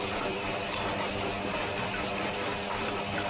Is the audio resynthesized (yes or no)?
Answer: no